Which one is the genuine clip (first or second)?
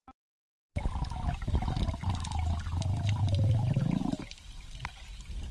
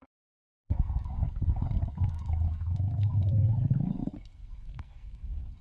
first